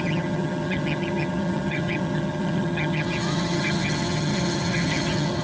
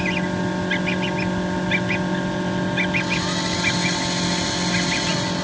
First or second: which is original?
second